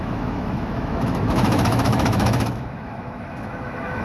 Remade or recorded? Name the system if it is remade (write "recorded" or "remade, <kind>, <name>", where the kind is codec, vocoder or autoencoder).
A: remade, autoencoder, DAC-VAE